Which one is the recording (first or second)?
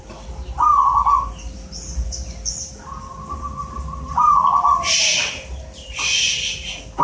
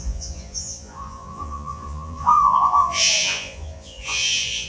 first